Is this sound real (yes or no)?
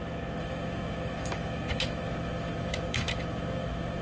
no